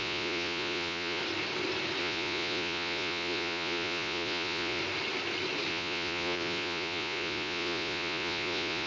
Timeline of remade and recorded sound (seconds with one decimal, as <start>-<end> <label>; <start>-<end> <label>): 0.0-1.2 remade; 1.2-2.0 recorded; 2.0-4.8 remade; 4.8-5.7 recorded; 5.7-8.9 remade